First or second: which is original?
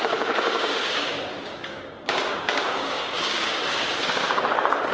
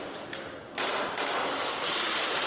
second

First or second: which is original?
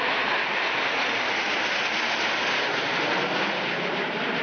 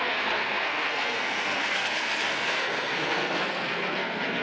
first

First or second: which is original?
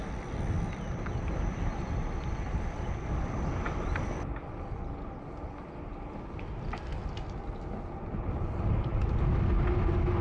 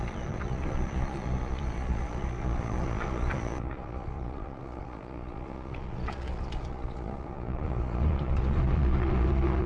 first